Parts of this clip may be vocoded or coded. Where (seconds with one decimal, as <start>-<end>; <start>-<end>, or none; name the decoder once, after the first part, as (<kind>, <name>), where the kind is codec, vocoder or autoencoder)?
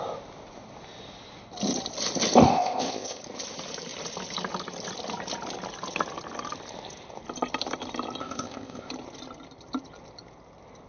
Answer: 2.5-3.2 (codec, ZipCodec); 8.2-8.9